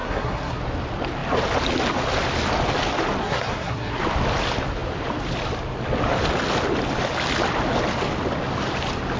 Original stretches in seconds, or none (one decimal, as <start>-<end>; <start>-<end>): 0.6-3.2; 4.0-9.2